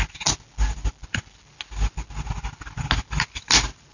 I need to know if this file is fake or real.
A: real